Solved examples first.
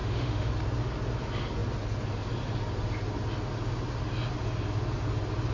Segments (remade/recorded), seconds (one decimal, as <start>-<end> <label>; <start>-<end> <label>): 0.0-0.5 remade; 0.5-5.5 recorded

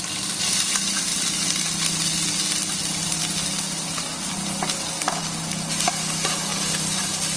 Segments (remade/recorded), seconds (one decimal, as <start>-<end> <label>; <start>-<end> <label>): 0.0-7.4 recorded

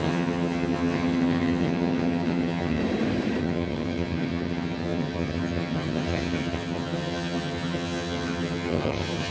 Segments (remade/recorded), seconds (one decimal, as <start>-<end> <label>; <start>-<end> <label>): 0.0-2.8 remade; 2.8-3.4 recorded; 3.4-9.3 remade